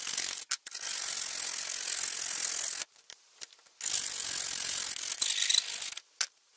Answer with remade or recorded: recorded